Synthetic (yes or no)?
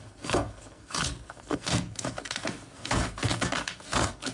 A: yes